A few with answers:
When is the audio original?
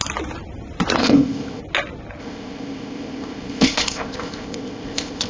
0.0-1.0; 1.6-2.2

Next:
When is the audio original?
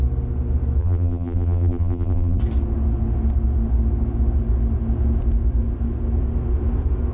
0.0-0.8; 2.4-7.1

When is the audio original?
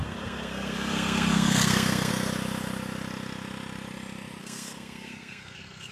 2.1-4.4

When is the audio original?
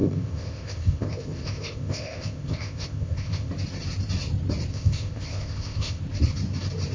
3.5-4.7; 6.0-6.9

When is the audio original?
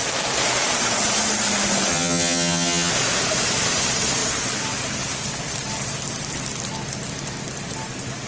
0.0-1.9; 2.9-8.3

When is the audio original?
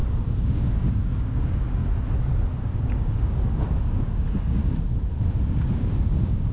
1.8-2.6; 4.6-5.2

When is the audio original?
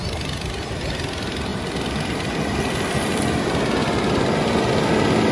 0.0-1.5; 4.7-5.3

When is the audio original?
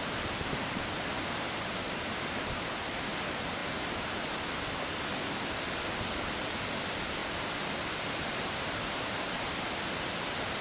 0.0-10.6